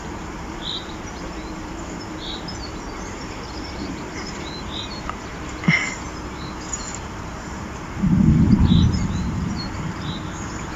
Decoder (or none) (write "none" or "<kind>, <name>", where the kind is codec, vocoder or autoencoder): vocoder, BigVGAN v2